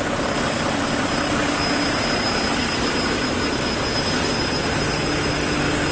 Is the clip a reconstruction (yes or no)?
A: no